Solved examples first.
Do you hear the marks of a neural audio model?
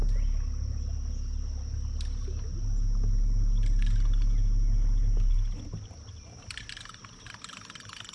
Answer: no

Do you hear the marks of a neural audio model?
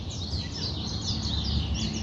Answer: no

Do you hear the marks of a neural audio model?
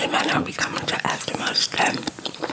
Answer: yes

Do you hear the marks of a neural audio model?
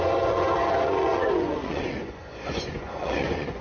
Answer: yes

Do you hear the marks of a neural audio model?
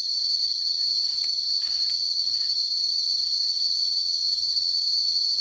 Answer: yes